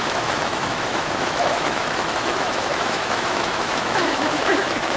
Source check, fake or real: fake